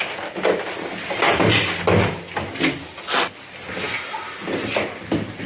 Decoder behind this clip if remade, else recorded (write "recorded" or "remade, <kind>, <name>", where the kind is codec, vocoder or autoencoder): recorded